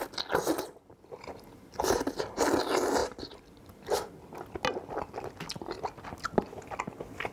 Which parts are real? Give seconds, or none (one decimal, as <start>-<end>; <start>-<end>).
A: 0.0-0.9; 2.4-7.3